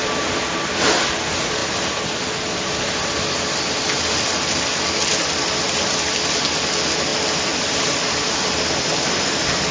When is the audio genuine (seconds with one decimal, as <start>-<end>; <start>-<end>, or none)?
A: 1.0-7.1